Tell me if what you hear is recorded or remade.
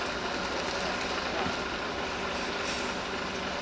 recorded